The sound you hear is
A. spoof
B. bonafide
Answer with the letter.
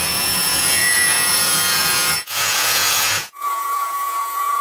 A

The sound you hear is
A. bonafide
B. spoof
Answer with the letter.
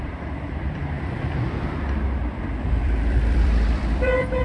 B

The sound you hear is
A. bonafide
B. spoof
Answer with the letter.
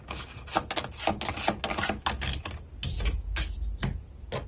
A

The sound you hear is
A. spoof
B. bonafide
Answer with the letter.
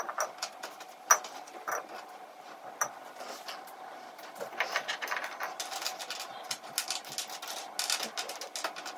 B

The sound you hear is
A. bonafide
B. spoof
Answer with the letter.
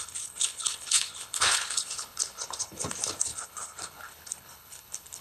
B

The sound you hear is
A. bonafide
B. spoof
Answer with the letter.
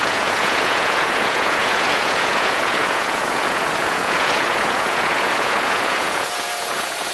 B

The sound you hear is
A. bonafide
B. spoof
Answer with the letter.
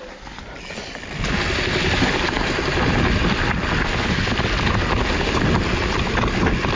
A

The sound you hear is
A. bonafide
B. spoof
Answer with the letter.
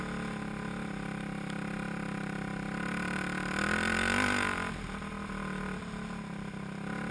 A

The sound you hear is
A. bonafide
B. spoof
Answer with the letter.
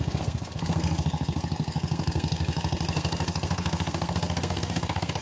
B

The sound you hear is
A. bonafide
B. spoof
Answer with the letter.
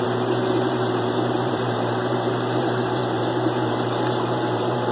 B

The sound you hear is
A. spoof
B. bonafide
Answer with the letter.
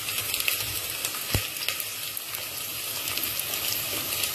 B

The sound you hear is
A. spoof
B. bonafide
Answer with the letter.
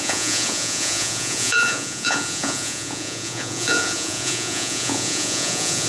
A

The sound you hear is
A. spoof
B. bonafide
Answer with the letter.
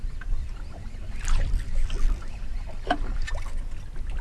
B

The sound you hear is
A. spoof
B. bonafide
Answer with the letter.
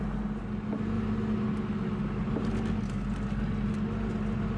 B